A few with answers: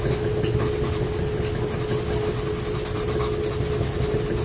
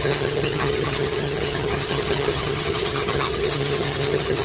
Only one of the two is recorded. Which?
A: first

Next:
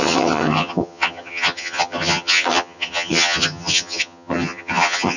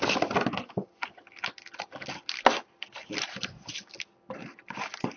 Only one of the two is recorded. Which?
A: second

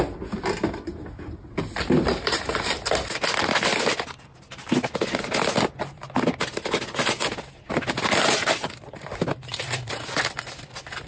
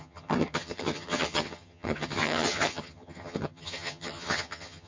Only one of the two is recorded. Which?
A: first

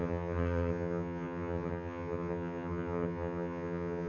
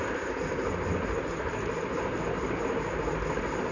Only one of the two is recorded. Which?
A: second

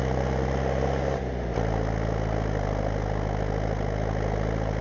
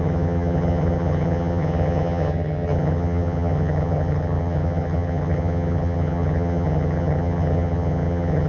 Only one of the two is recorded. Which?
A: first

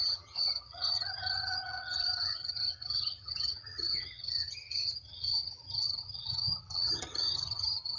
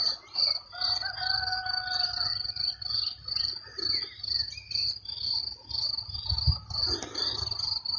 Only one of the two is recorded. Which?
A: second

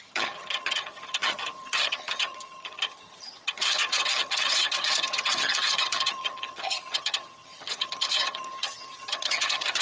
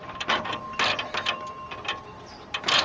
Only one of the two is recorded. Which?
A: second